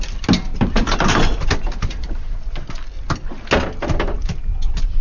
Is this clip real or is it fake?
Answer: real